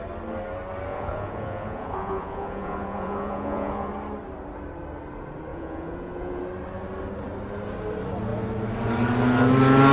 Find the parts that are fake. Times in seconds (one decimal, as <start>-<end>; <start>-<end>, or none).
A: 0.9-3.9; 5.5-6.4